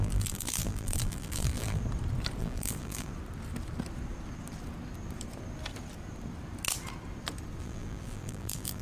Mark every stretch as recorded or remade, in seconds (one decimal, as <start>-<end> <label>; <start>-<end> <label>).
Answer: 0.0-1.8 remade; 1.8-2.4 recorded; 2.4-3.1 remade; 3.1-7.6 recorded; 7.6-8.8 remade